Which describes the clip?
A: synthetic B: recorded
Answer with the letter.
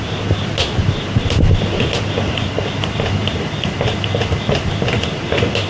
B